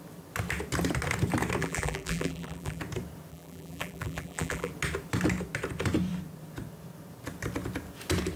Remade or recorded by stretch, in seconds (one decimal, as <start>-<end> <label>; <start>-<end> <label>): 0.0-1.6 recorded; 1.6-2.8 remade; 2.8-3.3 recorded; 3.3-4.7 remade; 4.7-8.4 recorded